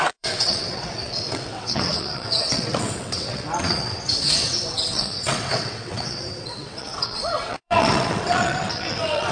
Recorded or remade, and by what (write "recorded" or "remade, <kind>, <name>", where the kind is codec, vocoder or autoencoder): remade, vocoder, WaveNeXt